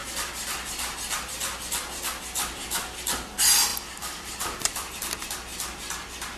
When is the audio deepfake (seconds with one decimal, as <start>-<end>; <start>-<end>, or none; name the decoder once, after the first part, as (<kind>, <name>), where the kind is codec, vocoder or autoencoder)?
3.7-4.9 (vocoder, BigVGAN v2)